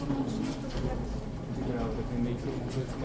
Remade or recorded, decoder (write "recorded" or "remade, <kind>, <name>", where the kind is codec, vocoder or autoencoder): recorded